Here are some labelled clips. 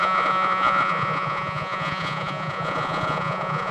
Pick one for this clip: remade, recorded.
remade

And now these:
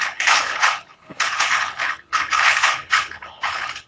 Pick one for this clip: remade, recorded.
remade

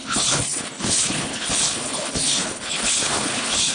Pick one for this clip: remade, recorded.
remade